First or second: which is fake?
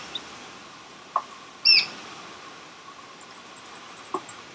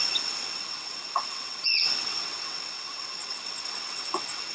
second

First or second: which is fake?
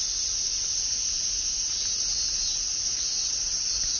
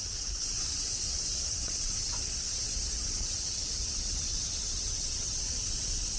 second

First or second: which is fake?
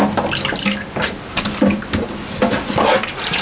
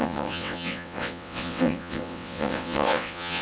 second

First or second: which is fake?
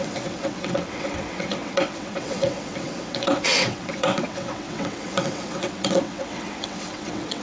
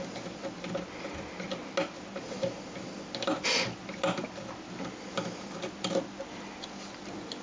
first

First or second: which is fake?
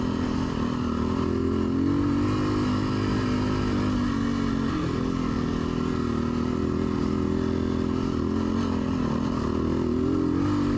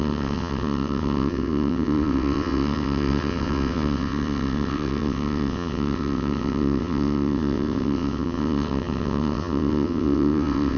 second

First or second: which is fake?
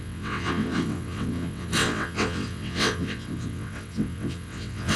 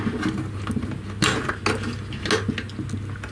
first